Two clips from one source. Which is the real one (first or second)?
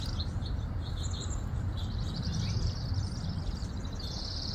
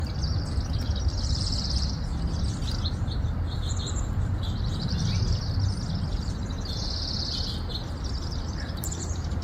second